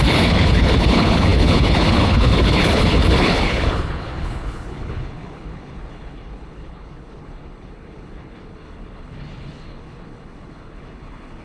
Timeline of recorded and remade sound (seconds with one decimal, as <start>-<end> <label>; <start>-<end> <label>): 0.0-11.4 remade